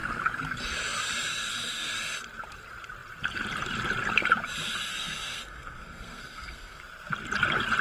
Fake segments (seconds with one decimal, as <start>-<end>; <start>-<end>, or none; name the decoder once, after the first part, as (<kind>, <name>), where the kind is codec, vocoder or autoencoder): 4.9-6.8 (codec, SNAC)